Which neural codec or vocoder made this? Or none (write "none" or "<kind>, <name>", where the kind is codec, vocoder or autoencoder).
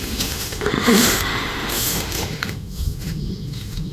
autoencoder, DAC-VAE